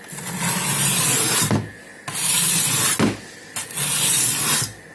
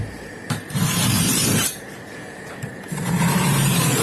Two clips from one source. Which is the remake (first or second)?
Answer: second